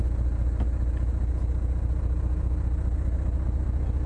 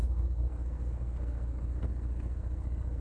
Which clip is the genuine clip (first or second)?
first